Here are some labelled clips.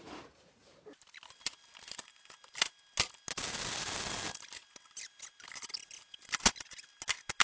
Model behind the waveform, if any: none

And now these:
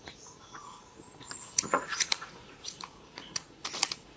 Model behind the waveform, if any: vocoder, Vocos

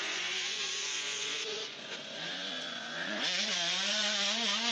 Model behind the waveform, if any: vocoder, Vocos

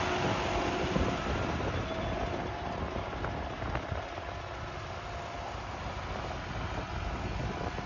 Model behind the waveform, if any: none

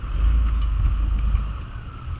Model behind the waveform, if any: none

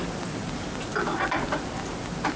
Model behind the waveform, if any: none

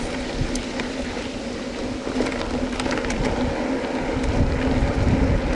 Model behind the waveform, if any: none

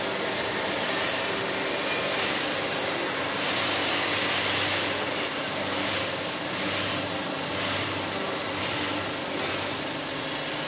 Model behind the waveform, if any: none